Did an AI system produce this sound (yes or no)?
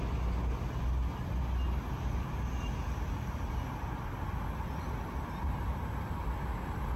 no